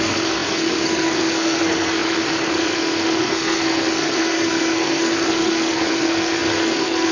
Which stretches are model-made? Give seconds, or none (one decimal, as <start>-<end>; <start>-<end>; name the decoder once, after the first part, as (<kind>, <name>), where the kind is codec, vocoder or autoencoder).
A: 0.0-7.1 (codec, SNAC)